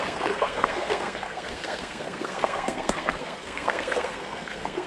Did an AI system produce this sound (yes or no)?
yes